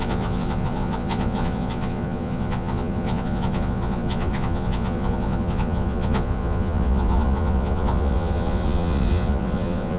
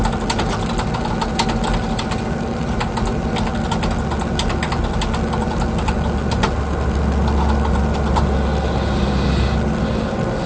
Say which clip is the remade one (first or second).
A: first